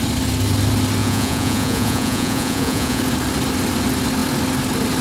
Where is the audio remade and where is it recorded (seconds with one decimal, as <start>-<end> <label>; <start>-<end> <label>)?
0.0-1.0 recorded; 1.0-3.0 remade; 3.0-5.0 recorded